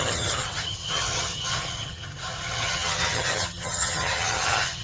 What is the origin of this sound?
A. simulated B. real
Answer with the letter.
A